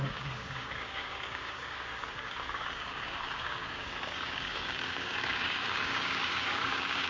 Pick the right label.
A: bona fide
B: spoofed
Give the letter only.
B